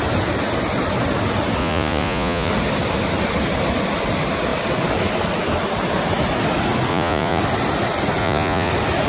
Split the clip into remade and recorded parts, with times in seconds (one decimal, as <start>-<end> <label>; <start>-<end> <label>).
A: 0.0-1.6 recorded; 1.6-2.5 remade; 2.5-6.9 recorded; 6.9-7.4 remade; 7.4-8.2 recorded; 8.2-8.7 remade; 8.7-9.1 recorded